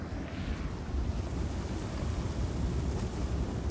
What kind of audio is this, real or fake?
real